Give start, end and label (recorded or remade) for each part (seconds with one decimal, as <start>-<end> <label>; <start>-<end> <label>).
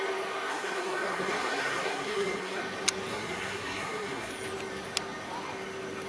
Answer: 0.0-0.5 recorded; 0.5-2.6 remade; 2.6-3.1 recorded; 3.1-4.3 remade; 4.3-6.1 recorded